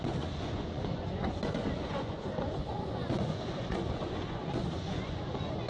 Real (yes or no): no